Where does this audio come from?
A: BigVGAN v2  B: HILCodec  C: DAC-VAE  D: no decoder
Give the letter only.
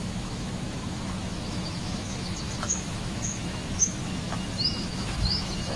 C